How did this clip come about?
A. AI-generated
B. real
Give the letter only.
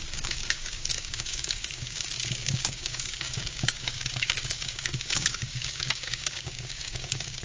A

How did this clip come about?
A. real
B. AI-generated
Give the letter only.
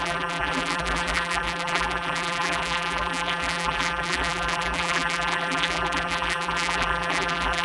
B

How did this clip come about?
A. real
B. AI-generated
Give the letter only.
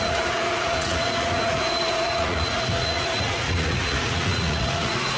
B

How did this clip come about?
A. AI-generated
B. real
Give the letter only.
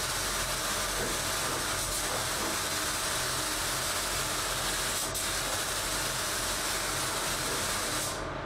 B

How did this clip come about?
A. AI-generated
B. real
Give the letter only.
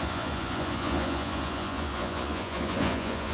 A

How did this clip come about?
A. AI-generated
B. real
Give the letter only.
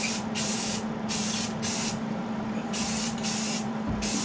A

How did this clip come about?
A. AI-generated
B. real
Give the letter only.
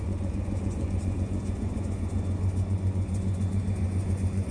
A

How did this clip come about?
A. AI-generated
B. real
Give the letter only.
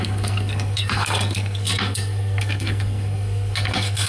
A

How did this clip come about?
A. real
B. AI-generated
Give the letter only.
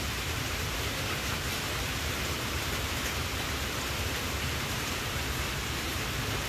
B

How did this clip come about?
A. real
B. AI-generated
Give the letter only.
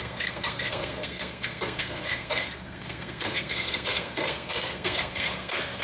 B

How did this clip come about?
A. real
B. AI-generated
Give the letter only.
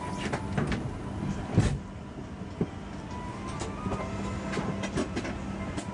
A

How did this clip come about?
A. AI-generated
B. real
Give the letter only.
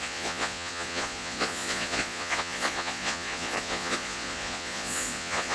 A